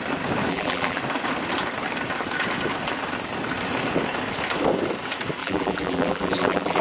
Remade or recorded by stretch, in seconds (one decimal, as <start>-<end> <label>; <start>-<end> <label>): 0.0-0.5 recorded; 0.5-1.0 remade; 1.0-5.4 recorded; 5.4-6.8 remade